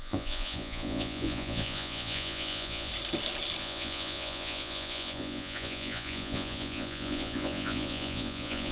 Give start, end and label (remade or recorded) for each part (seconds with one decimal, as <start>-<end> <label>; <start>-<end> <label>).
0.0-2.9 remade; 2.9-3.6 recorded; 3.6-8.7 remade

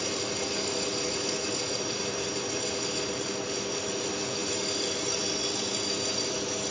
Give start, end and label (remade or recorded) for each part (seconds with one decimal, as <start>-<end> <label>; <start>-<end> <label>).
0.0-6.7 recorded

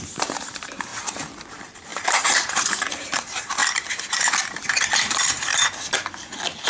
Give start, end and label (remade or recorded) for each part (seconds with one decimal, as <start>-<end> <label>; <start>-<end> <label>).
0.0-0.9 remade; 0.9-1.5 recorded; 1.5-3.6 remade; 3.6-4.8 recorded; 4.8-5.5 remade; 5.5-6.7 recorded

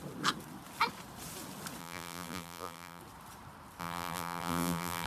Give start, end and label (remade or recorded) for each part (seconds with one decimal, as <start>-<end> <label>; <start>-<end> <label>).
0.0-1.8 recorded; 1.8-3.0 remade; 3.0-3.8 recorded; 3.8-5.1 remade

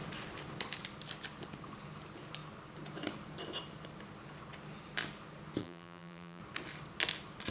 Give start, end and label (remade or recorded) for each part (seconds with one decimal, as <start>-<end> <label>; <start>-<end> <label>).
0.0-5.6 recorded; 5.6-6.4 remade; 6.4-7.5 recorded

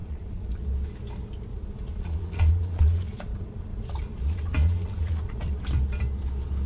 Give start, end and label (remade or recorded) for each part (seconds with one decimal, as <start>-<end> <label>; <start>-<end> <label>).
0.0-0.6 remade; 0.6-1.5 recorded; 1.5-5.5 remade; 5.5-6.7 recorded

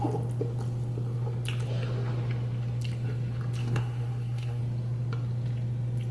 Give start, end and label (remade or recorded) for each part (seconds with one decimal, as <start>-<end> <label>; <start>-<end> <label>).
0.0-3.6 recorded; 3.6-4.6 remade; 4.6-6.1 recorded

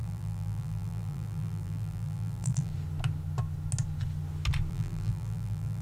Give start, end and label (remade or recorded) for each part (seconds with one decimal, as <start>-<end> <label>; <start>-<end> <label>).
0.0-2.7 remade; 2.7-4.7 recorded; 4.7-5.8 remade